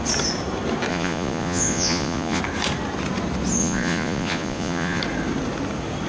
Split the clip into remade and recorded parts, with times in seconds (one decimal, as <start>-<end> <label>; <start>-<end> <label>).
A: 0.0-0.9 recorded; 0.9-2.4 remade; 2.4-3.6 recorded; 3.6-5.0 remade; 5.0-6.1 recorded